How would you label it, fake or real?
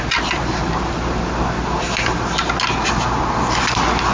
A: real